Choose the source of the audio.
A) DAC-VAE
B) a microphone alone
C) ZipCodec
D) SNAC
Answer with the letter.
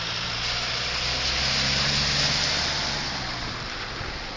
B